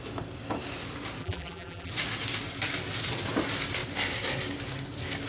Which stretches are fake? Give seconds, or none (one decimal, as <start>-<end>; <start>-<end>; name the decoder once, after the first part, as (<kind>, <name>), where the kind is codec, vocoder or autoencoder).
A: 1.2-1.9 (vocoder, BigVGAN v2)